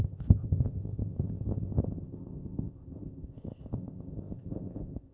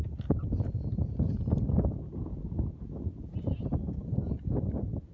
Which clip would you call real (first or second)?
second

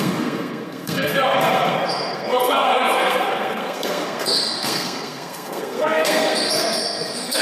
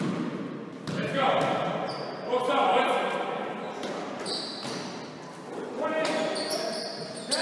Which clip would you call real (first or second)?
second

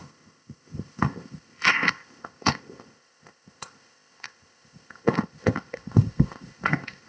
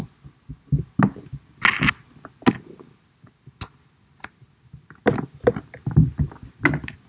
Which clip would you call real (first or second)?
second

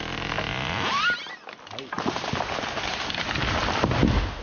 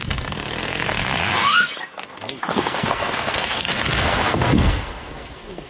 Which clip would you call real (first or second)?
first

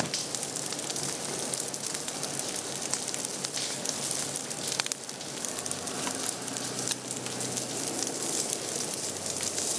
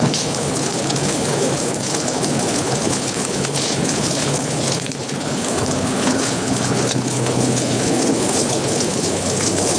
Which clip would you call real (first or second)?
first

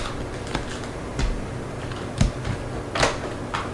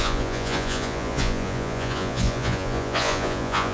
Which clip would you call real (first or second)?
first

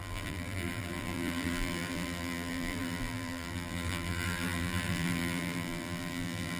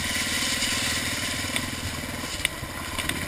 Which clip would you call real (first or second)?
second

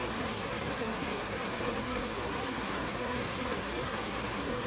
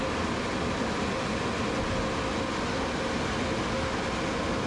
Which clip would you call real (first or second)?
second